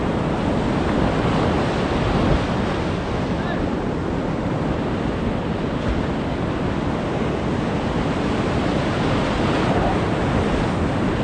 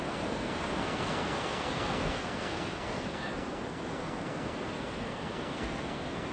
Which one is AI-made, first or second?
second